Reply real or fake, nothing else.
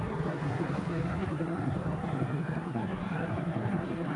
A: fake